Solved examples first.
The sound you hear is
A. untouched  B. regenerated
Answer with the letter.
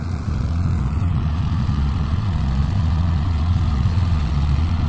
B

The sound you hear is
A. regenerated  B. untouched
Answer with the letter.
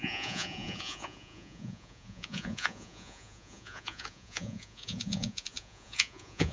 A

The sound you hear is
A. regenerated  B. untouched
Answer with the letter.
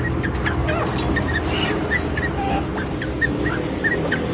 B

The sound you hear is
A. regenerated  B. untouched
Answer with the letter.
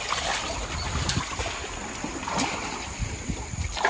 B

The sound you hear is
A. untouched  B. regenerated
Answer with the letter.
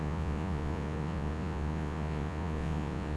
B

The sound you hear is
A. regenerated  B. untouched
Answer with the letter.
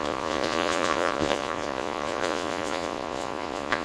A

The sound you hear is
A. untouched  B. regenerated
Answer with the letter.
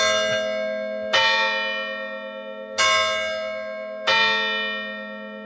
A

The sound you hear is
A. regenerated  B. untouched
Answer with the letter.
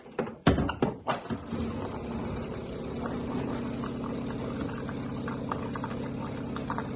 B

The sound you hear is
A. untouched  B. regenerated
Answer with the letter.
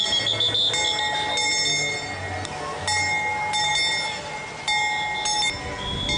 A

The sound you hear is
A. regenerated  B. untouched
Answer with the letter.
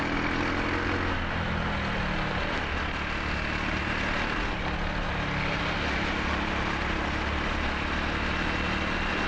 B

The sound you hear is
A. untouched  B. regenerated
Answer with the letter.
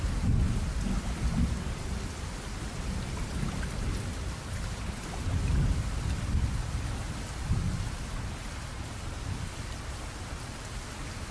A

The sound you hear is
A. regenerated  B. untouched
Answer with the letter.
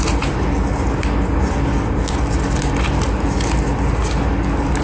B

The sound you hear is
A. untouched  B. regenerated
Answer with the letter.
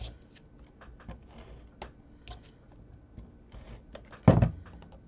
A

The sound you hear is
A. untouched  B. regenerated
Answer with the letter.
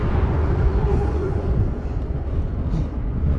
B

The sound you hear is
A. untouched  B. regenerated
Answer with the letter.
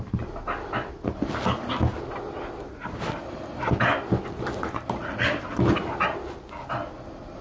A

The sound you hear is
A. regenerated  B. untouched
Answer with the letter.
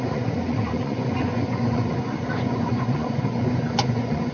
A